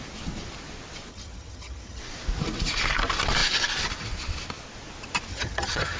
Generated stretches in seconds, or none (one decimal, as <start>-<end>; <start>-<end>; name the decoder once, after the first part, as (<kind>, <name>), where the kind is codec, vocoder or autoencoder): 1.1-2.0 (vocoder, HiFi-GAN); 5.3-6.0